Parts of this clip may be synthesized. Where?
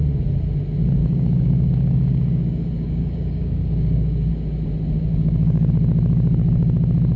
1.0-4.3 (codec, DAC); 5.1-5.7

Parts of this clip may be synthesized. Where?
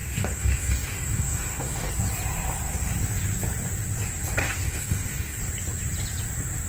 0.0-1.9 (codec, DAC); 4.4-5.4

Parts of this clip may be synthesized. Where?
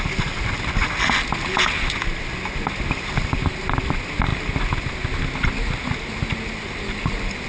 none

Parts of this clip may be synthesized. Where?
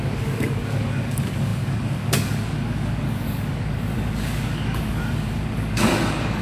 0.0-6.4 (codec, DAC)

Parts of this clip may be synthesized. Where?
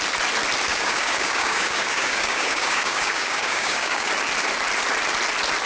0.7-4.1 (codec, DAC)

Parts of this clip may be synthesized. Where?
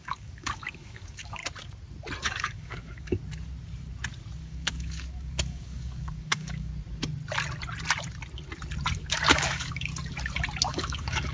0.0-1.4 (codec, DAC); 2.2-3.2; 4.4-6.7; 9.0-9.9; 10.7-11.3